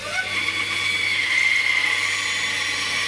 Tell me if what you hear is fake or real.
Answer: real